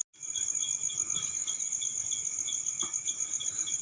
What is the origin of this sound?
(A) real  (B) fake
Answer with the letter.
A